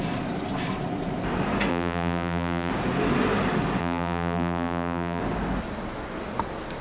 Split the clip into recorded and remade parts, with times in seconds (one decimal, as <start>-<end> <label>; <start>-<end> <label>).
0.0-1.7 recorded; 1.7-2.7 remade; 2.7-3.8 recorded; 3.8-5.2 remade; 5.2-6.8 recorded

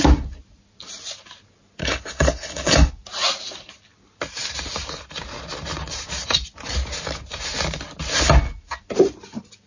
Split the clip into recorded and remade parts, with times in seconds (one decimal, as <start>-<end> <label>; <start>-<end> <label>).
0.0-1.8 recorded; 1.8-2.9 remade; 2.9-9.7 recorded

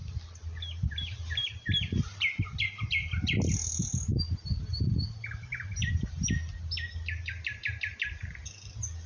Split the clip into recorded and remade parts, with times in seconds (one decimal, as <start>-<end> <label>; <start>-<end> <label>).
0.0-9.1 recorded

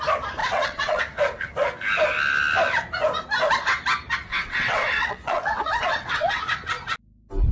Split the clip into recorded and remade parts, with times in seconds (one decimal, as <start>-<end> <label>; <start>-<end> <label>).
0.0-0.4 recorded; 0.4-1.0 remade; 1.0-4.3 recorded; 4.3-6.4 remade; 6.4-7.5 recorded

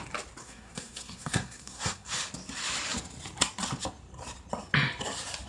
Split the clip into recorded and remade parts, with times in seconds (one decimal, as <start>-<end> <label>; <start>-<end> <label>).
0.0-0.4 recorded; 0.4-2.1 remade; 2.1-5.5 recorded

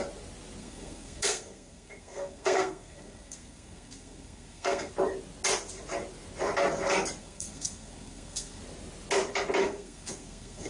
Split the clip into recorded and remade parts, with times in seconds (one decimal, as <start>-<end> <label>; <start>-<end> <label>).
0.0-0.6 recorded; 0.6-4.9 remade; 4.9-7.2 recorded; 7.2-8.6 remade; 8.6-9.6 recorded; 9.6-10.7 remade

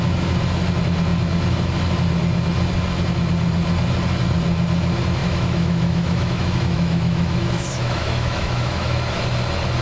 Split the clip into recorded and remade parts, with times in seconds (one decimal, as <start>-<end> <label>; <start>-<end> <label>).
0.0-5.2 recorded; 5.2-9.2 remade; 9.2-9.8 recorded

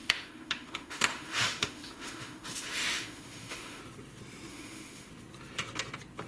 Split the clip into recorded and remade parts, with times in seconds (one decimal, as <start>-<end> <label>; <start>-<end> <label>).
0.0-3.8 remade; 3.8-4.5 recorded; 4.5-5.1 remade; 5.1-6.3 recorded